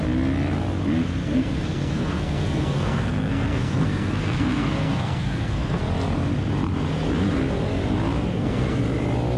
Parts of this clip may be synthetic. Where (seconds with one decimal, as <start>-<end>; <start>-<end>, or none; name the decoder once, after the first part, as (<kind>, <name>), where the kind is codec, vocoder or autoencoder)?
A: 1.2-5.8 (codec, SNAC); 8.3-8.8